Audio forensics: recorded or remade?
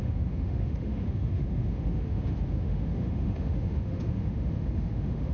remade